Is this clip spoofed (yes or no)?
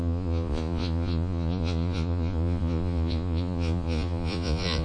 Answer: yes